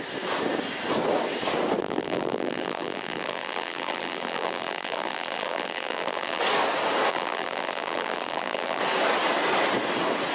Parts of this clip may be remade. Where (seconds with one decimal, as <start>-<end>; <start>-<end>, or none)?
1.8-6.4; 7.1-8.8